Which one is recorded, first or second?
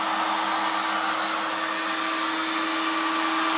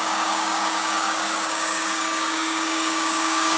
first